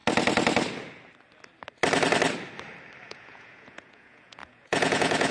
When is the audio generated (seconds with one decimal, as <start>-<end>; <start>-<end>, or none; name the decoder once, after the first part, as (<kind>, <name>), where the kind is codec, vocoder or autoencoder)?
3.0-5.3 (vocoder, Vocos)